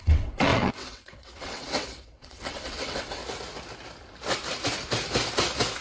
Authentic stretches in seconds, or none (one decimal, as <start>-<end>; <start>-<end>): 3.2-5.8